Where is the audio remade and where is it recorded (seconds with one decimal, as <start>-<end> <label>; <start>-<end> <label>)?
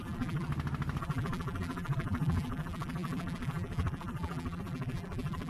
0.0-0.5 remade; 0.5-1.0 recorded; 1.0-5.5 remade